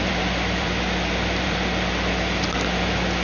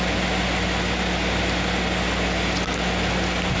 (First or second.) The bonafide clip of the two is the second